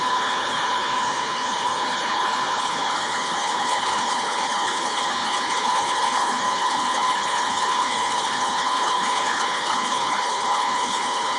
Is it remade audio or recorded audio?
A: remade